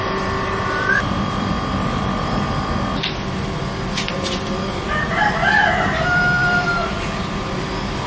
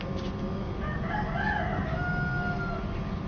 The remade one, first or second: first